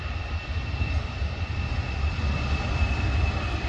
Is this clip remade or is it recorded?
remade